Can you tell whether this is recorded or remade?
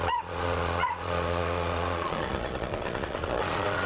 remade